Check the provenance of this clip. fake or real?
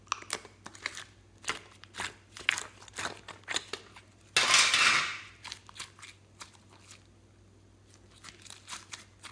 real